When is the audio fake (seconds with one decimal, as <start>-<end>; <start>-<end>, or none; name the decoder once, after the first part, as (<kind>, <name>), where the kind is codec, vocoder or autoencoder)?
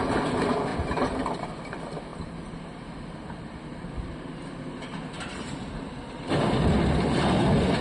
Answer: 0.7-1.5 (vocoder, BigVGAN v2); 2.1-6.3